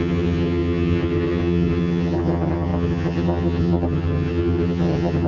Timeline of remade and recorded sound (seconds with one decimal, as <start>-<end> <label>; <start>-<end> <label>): 0.0-5.3 remade